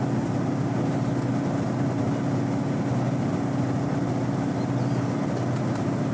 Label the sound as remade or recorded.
recorded